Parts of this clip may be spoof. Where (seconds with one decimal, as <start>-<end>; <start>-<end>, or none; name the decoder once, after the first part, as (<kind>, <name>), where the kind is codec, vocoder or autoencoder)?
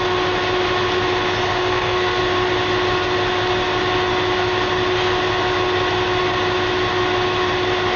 1.6-2.2 (codec, SNAC)